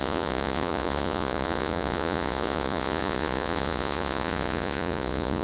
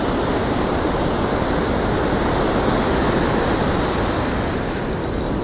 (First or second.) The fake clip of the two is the first